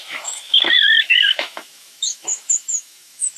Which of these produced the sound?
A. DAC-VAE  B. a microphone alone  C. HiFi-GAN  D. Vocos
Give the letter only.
A